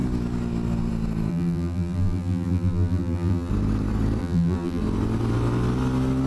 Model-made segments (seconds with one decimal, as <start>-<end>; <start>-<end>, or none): 1.3-3.5; 4.2-4.8